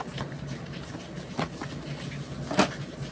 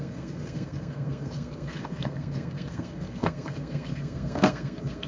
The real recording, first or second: first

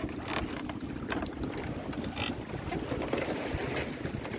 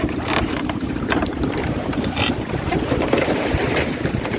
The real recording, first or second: first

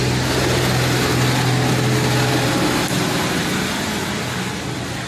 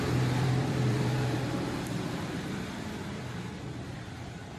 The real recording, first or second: first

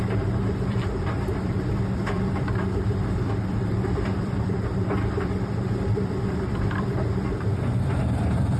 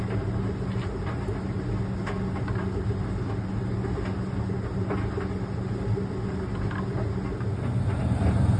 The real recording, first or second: second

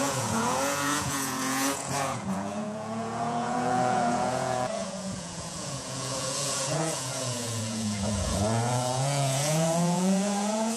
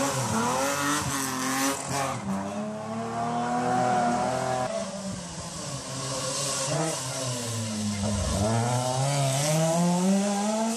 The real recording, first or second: second